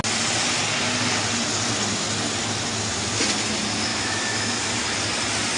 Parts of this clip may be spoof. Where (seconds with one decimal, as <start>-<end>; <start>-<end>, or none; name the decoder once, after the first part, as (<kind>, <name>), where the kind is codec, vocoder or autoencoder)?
3.9-4.7 (autoencoder, DAC-VAE)